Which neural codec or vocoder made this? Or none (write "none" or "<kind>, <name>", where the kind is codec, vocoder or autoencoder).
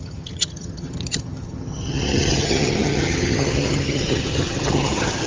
vocoder, HiFi-GAN